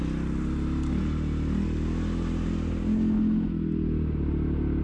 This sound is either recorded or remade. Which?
recorded